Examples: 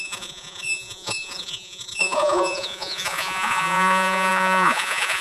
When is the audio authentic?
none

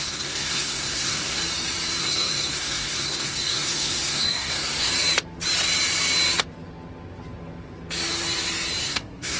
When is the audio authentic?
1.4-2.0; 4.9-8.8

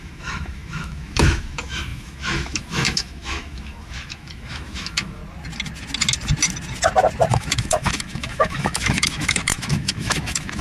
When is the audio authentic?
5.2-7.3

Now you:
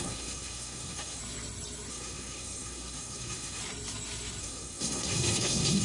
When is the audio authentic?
1.2-1.9; 3.6-4.4

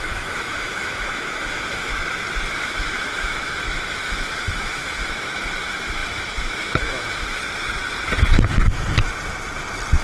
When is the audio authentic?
1.9-2.5; 7.4-10.0

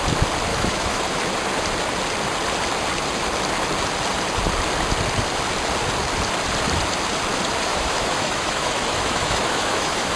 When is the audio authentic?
0.0-0.5; 1.0-7.7

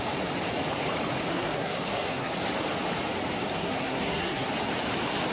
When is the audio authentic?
0.0-1.3; 2.3-3.6; 4.5-5.3

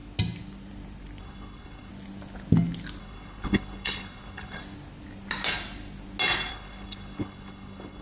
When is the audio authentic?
0.0-1.2; 1.9-3.0; 4.6-6.5